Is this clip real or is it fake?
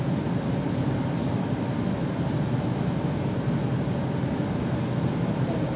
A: real